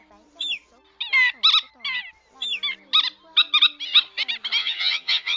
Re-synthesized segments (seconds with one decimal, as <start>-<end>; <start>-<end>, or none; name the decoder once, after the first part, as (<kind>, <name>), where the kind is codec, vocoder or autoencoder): 4.6-5.4 (vocoder, HiFi-GAN)